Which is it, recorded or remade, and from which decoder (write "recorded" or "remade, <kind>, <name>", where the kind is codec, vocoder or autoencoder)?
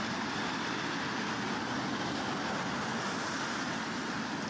recorded